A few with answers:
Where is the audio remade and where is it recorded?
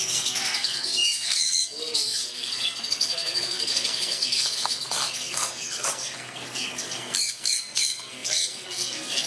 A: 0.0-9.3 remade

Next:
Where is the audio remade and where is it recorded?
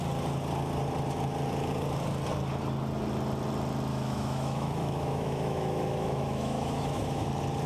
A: 0.0-3.9 recorded; 3.9-7.3 remade; 7.3-7.7 recorded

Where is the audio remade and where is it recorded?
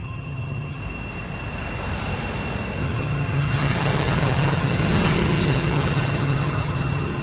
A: 0.0-0.8 remade; 0.8-2.8 recorded; 2.8-7.2 remade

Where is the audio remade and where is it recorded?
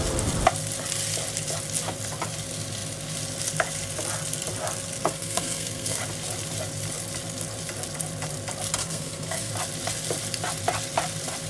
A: 0.0-5.0 recorded; 5.0-6.0 remade; 6.0-8.8 recorded; 8.8-9.5 remade; 9.5-11.5 recorded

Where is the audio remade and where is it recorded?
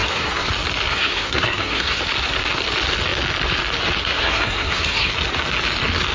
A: 0.0-0.5 remade; 0.5-0.9 recorded; 0.9-2.0 remade; 2.0-4.0 recorded; 4.0-5.1 remade; 5.1-6.1 recorded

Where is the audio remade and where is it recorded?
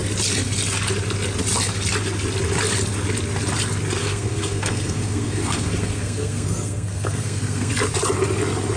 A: 0.0-4.0 recorded; 4.0-7.7 remade; 7.7-8.8 recorded